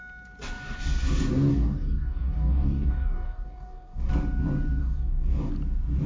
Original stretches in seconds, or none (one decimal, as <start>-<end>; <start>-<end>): 0.0-1.5; 4.1-4.8; 5.5-6.1